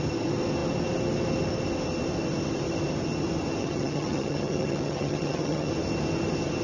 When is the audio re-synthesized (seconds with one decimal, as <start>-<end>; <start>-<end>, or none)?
3.6-5.7